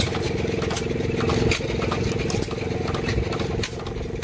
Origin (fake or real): real